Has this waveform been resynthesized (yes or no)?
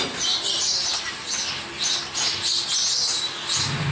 no